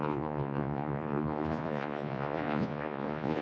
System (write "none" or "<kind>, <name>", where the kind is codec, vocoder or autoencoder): vocoder, Vocos